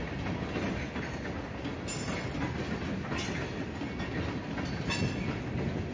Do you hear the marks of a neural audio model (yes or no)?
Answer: no